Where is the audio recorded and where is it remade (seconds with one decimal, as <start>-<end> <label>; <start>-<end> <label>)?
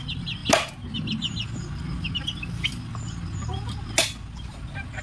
0.0-5.0 recorded